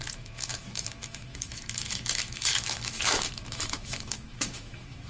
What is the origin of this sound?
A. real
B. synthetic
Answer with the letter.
B